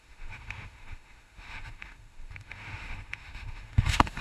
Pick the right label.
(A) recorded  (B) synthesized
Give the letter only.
B